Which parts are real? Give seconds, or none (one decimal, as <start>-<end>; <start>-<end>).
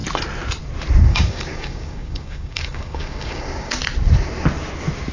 0.0-1.1; 3.7-5.1